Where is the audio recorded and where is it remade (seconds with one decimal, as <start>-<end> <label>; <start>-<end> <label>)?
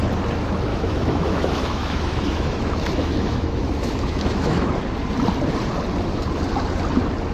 0.0-0.7 recorded; 0.7-4.7 remade; 4.7-7.3 recorded